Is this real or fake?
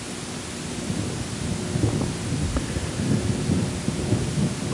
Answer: real